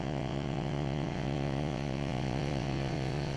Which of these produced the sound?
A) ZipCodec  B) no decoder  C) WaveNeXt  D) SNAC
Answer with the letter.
C